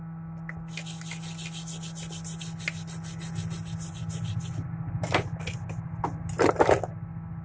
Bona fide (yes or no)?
yes